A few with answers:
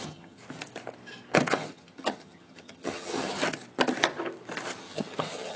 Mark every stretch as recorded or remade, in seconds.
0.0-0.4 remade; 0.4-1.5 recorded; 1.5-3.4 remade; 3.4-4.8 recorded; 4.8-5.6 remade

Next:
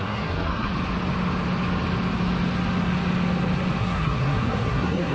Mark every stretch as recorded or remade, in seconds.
0.0-0.7 remade; 0.7-3.8 recorded; 3.8-5.1 remade